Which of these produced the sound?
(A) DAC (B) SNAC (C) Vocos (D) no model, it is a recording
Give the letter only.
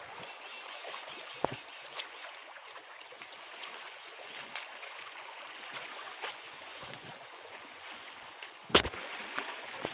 C